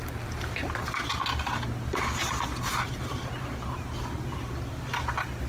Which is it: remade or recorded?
recorded